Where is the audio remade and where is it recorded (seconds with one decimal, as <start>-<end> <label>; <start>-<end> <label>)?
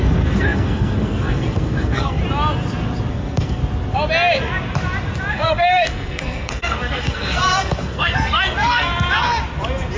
0.0-2.2 remade; 2.2-3.1 recorded; 3.1-3.6 remade; 3.6-5.3 recorded; 5.3-8.9 remade; 8.9-10.0 recorded